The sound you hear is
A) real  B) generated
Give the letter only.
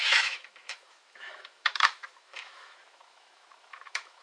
B